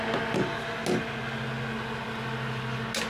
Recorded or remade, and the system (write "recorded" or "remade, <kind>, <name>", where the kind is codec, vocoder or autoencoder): recorded